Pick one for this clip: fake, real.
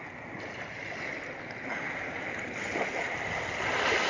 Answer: real